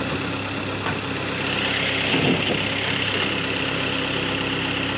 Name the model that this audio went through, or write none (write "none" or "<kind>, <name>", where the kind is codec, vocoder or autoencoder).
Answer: none